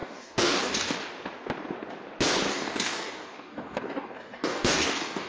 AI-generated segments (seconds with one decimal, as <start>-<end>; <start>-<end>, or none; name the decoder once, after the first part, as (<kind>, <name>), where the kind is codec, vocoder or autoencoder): 0.0-1.1 (codec, DAC); 2.5-5.3